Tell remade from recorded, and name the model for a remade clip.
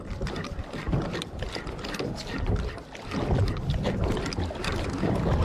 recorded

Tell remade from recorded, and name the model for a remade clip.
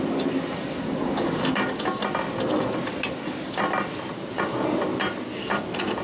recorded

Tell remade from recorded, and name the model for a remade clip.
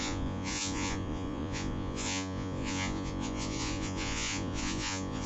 remade, vocoder, Vocos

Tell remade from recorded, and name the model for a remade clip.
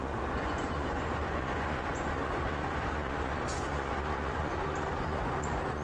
remade, vocoder, Vocos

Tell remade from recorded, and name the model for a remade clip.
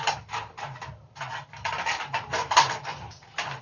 recorded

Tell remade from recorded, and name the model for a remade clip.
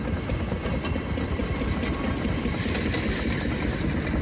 recorded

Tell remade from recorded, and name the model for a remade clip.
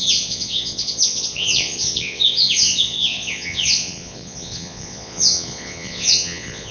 remade, vocoder, Vocos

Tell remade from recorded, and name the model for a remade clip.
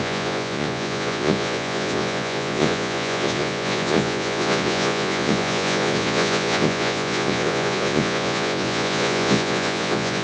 remade, vocoder, Vocos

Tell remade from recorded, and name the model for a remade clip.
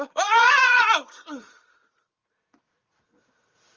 remade, vocoder, Vocos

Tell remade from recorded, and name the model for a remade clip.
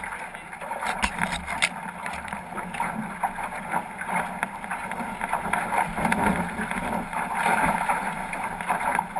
recorded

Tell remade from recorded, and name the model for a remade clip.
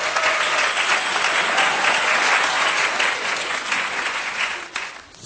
remade, vocoder, Vocos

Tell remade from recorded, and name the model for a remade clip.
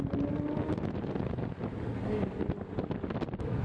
recorded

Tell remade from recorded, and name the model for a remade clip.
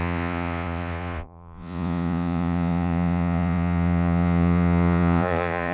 remade, vocoder, Vocos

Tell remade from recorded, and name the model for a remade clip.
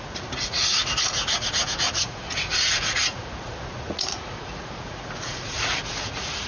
remade, vocoder, Vocos